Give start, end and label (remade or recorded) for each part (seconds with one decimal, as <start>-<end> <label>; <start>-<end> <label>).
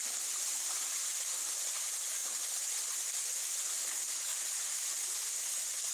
0.0-5.9 recorded